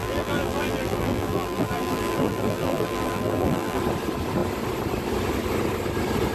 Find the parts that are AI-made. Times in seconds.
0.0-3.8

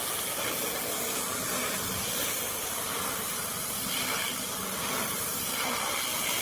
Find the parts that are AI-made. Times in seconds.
1.4-2.4

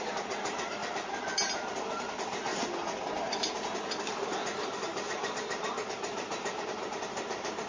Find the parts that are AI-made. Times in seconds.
0.0-0.8; 1.7-2.5; 5.9-7.7

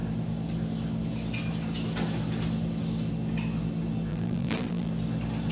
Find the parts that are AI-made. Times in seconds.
4.1-4.9

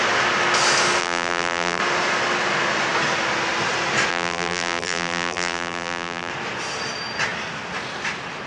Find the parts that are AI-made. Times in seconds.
1.0-1.8; 4.1-6.3

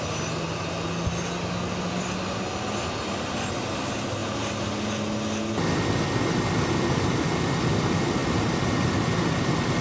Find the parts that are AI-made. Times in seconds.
none